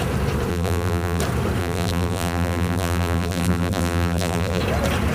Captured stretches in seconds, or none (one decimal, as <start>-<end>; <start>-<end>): 0.0-0.5; 1.2-1.6; 4.6-5.1

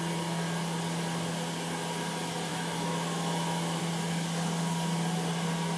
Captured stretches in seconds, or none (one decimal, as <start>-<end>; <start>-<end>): 0.0-2.5; 3.8-5.8

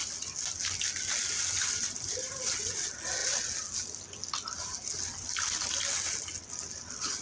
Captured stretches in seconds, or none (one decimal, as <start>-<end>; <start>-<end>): 0.0-7.2

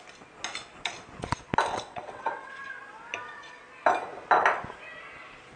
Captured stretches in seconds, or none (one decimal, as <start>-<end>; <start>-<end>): 0.0-1.7; 2.6-5.6

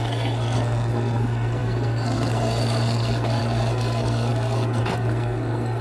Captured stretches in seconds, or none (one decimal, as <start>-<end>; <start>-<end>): none

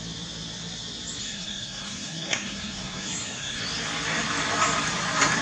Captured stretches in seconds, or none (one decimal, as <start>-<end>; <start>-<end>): 0.0-1.2; 3.6-5.4

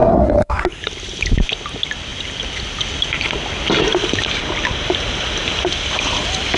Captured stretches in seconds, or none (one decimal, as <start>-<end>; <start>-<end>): 0.6-6.6

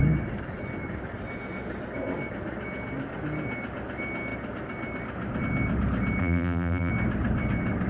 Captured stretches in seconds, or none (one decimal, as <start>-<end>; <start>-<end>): 0.0-6.2; 6.9-7.9